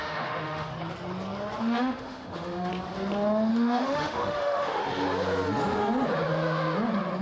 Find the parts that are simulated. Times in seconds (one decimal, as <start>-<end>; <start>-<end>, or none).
0.0-0.7; 1.6-2.7; 3.5-4.8